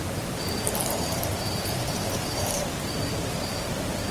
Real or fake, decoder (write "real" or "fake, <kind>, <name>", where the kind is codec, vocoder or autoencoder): fake, vocoder, BigVGAN v2